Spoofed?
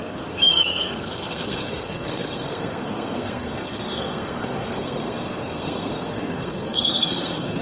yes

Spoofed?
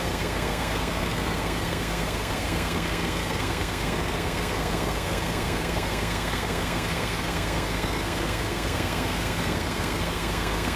yes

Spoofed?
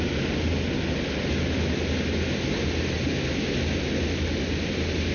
no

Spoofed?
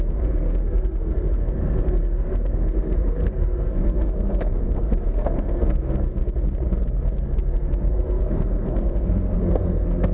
yes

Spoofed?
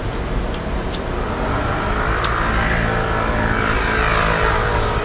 no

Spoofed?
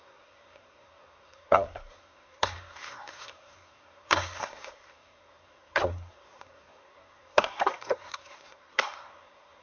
yes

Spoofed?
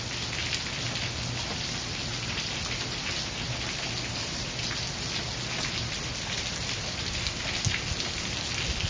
no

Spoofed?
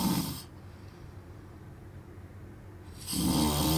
no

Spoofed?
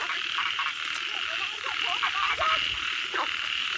no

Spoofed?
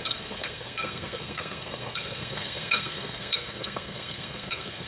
yes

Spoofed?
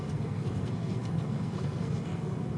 yes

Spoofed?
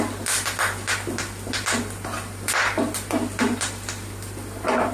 no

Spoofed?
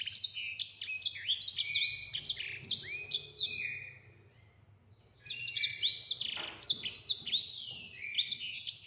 no